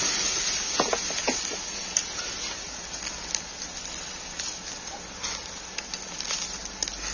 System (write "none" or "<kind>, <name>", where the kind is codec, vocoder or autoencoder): none